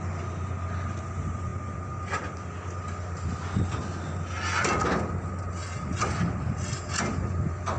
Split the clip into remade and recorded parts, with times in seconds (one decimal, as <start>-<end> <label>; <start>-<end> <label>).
0.0-7.8 recorded

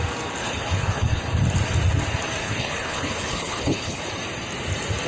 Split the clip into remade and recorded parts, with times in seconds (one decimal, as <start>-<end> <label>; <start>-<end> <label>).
0.0-0.4 recorded; 0.4-1.2 remade; 1.2-2.4 recorded; 2.4-4.0 remade; 4.0-5.1 recorded

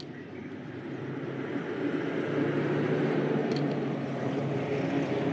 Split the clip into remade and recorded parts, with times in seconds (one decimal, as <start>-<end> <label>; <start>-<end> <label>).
0.0-0.4 recorded; 0.4-1.0 remade; 1.0-3.4 recorded; 3.4-4.4 remade; 4.4-5.3 recorded

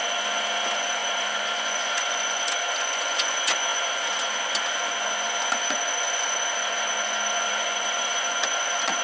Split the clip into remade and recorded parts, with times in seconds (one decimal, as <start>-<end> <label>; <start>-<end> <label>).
0.0-9.0 remade

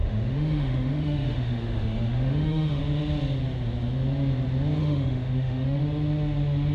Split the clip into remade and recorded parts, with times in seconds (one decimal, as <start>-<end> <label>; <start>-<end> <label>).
0.0-2.8 remade; 2.8-4.8 recorded; 4.8-5.8 remade; 5.8-6.7 recorded

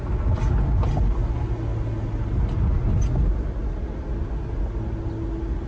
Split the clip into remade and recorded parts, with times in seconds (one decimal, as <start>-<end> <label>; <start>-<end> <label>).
0.0-5.7 recorded

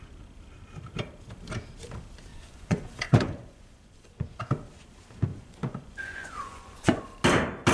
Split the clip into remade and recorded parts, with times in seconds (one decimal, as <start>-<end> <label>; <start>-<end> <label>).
0.0-2.3 recorded; 2.3-4.4 remade; 4.4-5.3 recorded; 5.3-7.0 remade; 7.0-7.7 recorded